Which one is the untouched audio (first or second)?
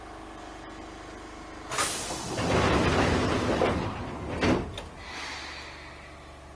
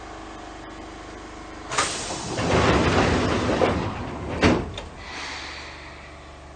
first